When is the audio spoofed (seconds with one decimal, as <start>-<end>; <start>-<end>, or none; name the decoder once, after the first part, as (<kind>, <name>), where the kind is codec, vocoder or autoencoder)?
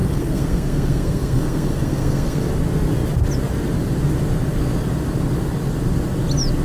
0.0-2.5 (codec, SNAC)